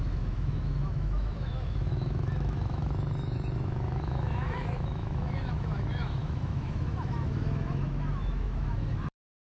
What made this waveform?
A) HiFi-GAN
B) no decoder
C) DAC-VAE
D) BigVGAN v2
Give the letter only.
C